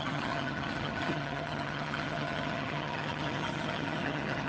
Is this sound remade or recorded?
remade